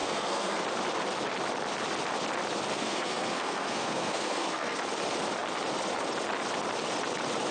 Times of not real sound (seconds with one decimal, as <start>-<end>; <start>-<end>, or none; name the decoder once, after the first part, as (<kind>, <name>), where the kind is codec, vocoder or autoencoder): 0.0-0.6 (codec, SNAC); 2.7-4.8